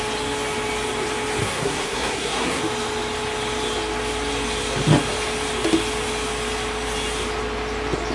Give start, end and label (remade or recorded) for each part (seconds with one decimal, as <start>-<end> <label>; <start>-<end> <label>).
0.0-1.4 recorded; 1.4-2.6 remade; 2.6-8.1 recorded